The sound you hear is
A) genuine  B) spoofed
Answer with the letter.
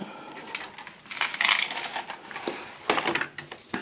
A